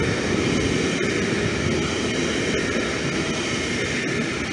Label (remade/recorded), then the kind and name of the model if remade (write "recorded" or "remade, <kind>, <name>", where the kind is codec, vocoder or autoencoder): recorded